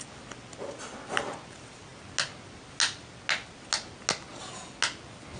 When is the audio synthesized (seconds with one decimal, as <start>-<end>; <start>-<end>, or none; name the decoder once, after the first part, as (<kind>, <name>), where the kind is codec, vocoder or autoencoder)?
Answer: none